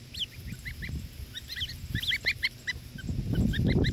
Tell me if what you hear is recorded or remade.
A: recorded